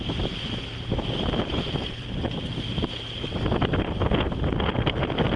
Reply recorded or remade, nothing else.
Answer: recorded